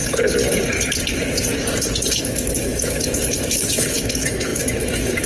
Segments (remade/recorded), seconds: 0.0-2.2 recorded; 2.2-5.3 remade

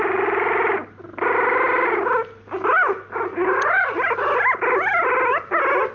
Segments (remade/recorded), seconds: 0.0-5.9 recorded